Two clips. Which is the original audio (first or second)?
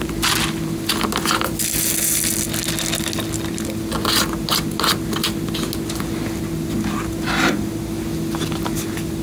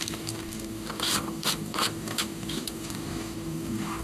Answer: first